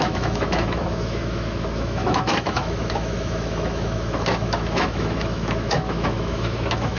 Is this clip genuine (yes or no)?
no